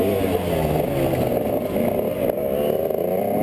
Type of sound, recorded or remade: recorded